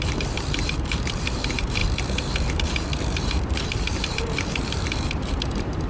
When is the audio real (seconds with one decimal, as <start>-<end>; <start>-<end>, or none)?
none